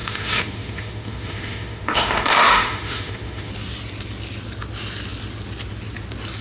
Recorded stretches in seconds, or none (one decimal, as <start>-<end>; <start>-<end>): 3.5-6.4